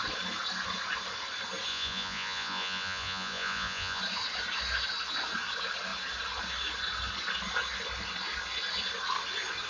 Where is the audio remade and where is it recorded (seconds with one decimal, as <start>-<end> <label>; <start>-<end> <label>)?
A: 0.0-1.7 recorded; 1.7-4.0 remade; 4.0-9.7 recorded